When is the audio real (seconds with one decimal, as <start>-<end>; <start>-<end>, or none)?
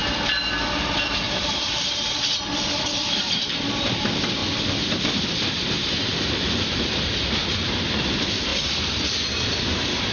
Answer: 0.0-0.8; 4.4-5.0; 8.5-9.5